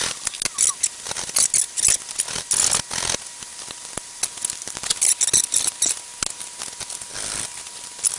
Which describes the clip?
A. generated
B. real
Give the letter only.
B